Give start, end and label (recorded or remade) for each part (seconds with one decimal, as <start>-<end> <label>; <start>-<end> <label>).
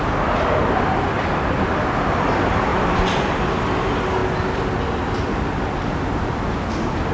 0.0-2.7 recorded; 2.7-3.4 remade; 3.4-7.1 recorded